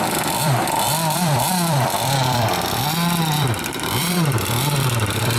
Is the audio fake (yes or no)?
yes